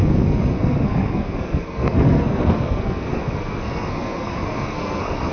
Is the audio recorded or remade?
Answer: remade